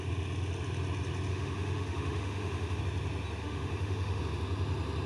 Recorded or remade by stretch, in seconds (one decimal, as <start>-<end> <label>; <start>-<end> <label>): 0.0-1.3 recorded; 1.3-2.8 remade; 2.8-3.4 recorded; 3.4-4.2 remade; 4.2-5.1 recorded